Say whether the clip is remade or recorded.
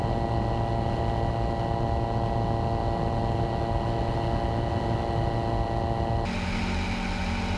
recorded